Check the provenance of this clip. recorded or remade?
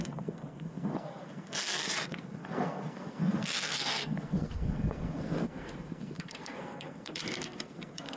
remade